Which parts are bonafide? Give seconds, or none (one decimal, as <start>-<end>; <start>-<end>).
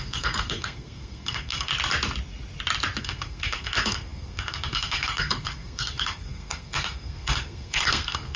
1.7-3.0